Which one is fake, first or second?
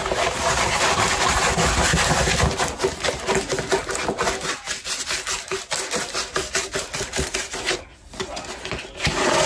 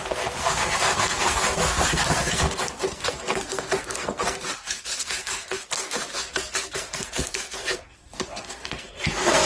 second